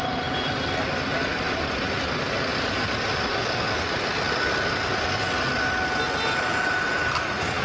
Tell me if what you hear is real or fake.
real